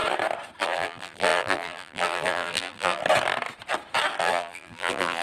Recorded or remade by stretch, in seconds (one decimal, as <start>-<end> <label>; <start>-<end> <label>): 0.0-0.6 recorded; 0.6-3.0 remade; 3.0-4.2 recorded; 4.2-5.2 remade